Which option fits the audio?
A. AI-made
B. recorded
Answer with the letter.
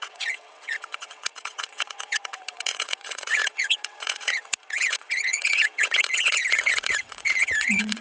A